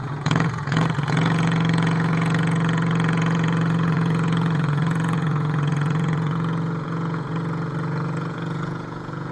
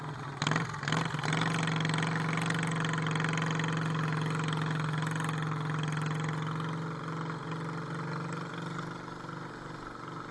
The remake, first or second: first